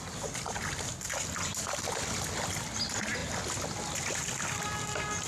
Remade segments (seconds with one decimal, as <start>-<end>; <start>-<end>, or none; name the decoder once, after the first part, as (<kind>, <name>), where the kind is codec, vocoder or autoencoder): none